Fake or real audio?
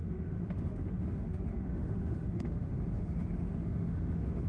fake